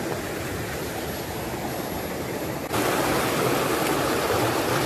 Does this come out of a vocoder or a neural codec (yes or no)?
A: no